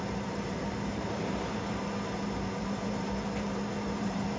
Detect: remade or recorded remade